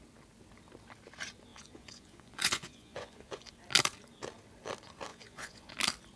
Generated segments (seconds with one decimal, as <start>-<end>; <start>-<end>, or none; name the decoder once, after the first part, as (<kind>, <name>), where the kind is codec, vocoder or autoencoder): 1.5-3.5 (vocoder, Vocos); 5.1-5.7